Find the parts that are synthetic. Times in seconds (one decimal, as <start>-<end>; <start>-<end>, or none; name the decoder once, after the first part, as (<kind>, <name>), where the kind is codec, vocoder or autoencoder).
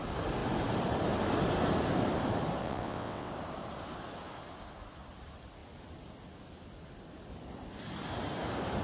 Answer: 2.6-3.3 (vocoder, WaveNeXt)